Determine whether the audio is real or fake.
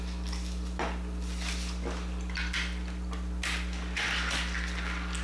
real